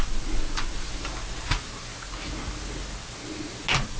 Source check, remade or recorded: recorded